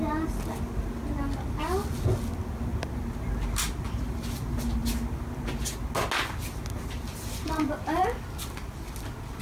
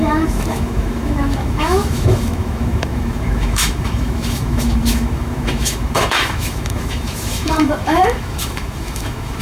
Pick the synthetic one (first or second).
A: second